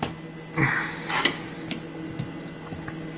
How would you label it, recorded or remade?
recorded